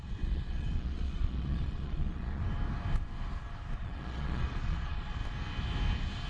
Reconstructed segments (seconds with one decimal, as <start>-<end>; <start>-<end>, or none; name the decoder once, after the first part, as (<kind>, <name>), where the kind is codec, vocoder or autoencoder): 0.0-2.4 (vocoder, Vocos); 3.8-5.2